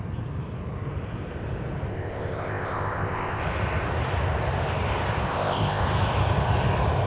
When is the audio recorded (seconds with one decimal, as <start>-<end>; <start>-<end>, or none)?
0.0-1.9; 3.4-5.3; 5.8-7.1